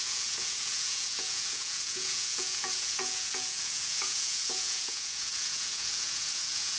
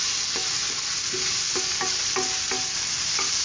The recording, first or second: second